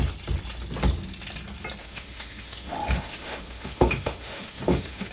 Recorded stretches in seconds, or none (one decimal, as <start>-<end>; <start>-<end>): 0.0-1.8